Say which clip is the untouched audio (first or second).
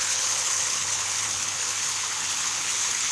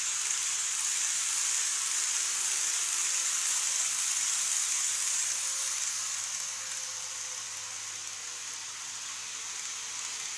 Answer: second